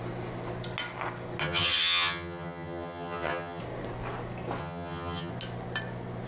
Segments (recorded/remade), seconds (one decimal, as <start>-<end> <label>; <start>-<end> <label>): 0.0-1.4 recorded; 1.4-3.6 remade; 3.6-4.6 recorded; 4.6-5.3 remade; 5.3-6.3 recorded